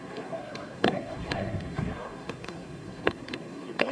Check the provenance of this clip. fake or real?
fake